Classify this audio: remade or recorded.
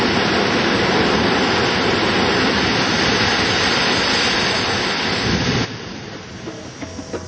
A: recorded